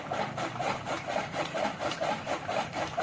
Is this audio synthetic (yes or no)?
yes